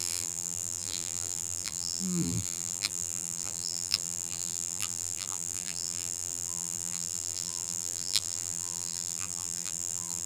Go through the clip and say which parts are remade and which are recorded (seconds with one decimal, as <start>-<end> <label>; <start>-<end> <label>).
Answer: 0.0-10.3 remade